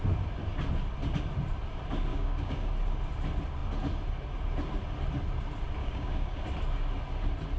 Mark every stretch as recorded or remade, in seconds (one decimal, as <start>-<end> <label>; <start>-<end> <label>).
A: 0.0-2.1 recorded; 2.1-2.7 remade; 2.7-5.8 recorded; 5.8-6.4 remade; 6.4-7.6 recorded